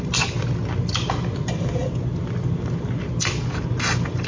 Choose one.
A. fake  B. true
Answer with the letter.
B